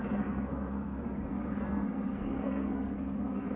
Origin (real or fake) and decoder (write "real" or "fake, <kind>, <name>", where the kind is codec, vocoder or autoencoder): fake, codec, SNAC